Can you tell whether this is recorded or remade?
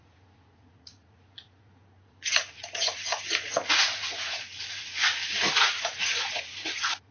remade